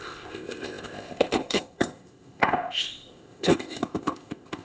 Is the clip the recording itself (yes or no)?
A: no